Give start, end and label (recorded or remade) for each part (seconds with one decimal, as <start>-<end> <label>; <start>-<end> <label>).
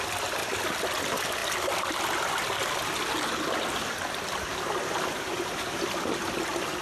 0.0-0.4 recorded; 0.4-1.0 remade; 1.0-6.8 recorded